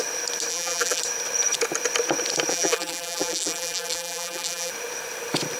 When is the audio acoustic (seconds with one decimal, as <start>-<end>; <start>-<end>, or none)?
0.0-0.5; 1.0-2.5; 4.7-5.6